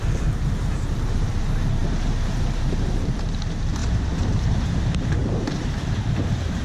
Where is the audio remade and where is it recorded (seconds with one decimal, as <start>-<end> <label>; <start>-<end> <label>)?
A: 0.0-6.6 remade